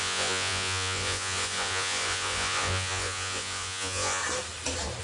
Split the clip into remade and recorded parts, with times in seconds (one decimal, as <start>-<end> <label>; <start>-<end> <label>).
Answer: 0.0-4.2 remade; 4.2-5.0 recorded